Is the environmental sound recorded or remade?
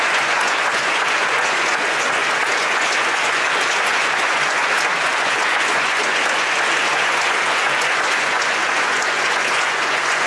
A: remade